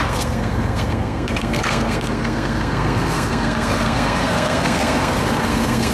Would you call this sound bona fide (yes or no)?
no